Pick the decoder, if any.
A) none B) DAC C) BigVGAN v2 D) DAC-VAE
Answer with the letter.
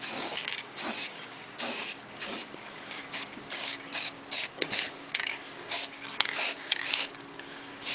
B